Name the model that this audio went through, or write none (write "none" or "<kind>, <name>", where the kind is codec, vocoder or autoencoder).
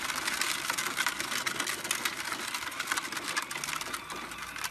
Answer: none